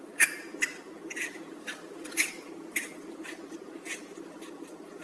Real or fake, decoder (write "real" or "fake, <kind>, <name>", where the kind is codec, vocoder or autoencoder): real